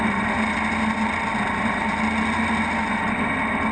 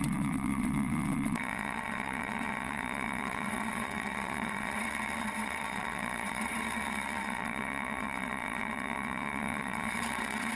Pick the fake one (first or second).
second